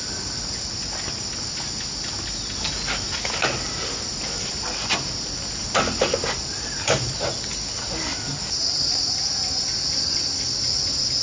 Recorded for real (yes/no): yes